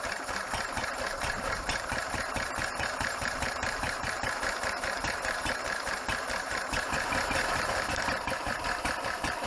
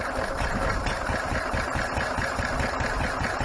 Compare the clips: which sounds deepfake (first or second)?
first